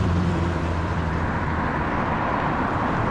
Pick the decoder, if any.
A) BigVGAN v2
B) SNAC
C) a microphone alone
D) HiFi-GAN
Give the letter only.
A